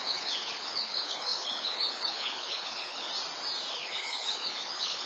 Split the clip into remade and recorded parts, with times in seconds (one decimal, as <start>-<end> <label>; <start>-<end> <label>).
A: 0.0-3.1 remade; 3.1-3.7 recorded; 3.7-5.1 remade